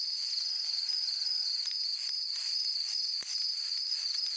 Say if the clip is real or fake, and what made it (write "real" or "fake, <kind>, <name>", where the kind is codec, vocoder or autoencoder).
real